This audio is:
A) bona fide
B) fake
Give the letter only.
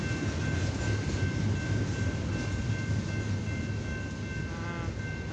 A